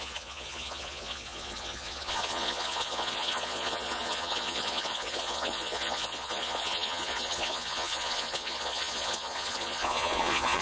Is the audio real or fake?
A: fake